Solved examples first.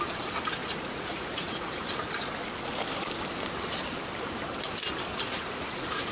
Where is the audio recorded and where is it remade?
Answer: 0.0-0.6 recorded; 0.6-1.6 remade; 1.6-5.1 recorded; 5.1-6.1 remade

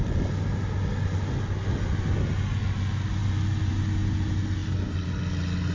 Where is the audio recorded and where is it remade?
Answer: 0.0-5.7 recorded

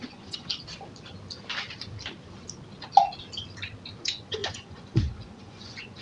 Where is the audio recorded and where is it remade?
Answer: 0.0-0.5 remade; 0.5-4.0 recorded; 4.0-6.0 remade

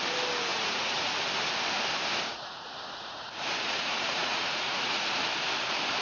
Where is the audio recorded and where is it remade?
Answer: 0.0-0.5 recorded; 0.5-1.1 remade; 1.1-2.3 recorded; 2.3-5.1 remade; 5.1-6.0 recorded

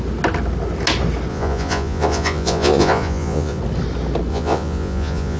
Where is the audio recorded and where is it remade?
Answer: 0.0-1.3 recorded; 1.3-3.6 remade; 3.6-4.3 recorded; 4.3-5.4 remade

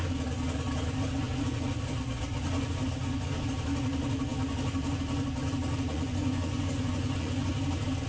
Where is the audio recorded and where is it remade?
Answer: 0.0-5.9 recorded; 5.9-7.5 remade; 7.5-8.1 recorded

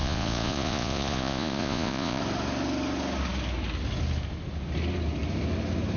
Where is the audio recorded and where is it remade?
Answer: 0.0-2.2 remade; 2.2-6.0 recorded

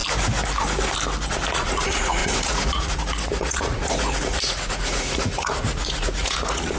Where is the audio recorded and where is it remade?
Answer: 0.0-1.3 recorded; 1.3-6.8 remade